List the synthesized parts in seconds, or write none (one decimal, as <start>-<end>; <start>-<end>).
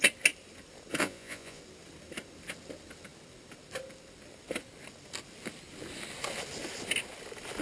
1.0-1.6